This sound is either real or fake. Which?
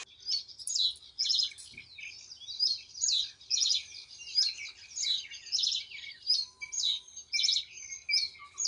real